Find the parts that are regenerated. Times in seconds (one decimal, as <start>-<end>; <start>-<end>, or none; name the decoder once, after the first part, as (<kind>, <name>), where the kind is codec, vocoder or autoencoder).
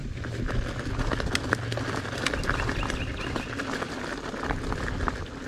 none